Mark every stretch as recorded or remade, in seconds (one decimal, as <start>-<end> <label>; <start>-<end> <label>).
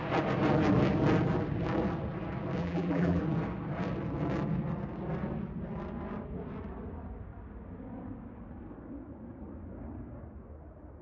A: 0.0-2.6 recorded; 2.6-3.2 remade; 3.2-11.0 recorded